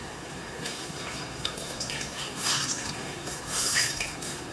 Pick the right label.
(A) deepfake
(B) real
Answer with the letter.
A